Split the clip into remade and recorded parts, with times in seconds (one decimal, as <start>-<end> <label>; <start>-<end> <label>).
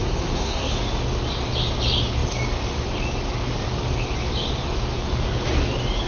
0.0-0.7 remade; 0.7-6.1 recorded